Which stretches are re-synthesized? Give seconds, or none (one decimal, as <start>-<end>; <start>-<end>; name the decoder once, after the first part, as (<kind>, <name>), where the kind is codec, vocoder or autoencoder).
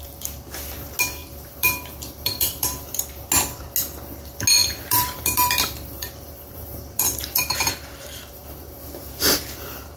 1.2-3.0 (vocoder, BigVGAN v2); 4.6-10.0